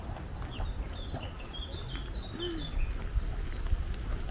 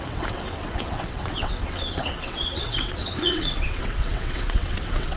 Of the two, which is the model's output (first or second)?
second